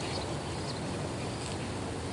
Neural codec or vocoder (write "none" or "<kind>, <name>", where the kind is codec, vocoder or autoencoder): none